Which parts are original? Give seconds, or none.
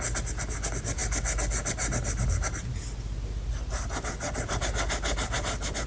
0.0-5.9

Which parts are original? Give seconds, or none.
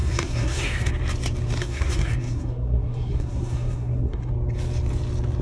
0.9-1.6; 4.3-5.4